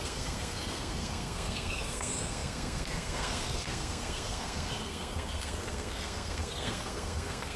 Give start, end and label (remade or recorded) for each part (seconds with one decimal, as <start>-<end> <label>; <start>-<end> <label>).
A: 0.0-7.6 remade